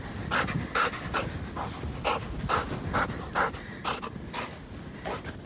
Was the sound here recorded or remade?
recorded